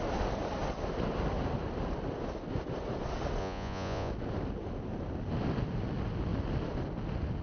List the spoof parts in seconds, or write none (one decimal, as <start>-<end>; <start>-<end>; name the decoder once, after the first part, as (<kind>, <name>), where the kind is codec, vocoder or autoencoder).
3.4-4.1 (vocoder, Vocos)